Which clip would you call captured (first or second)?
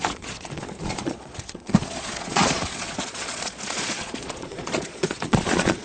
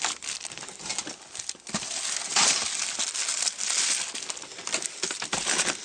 second